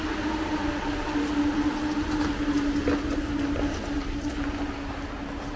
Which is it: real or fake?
real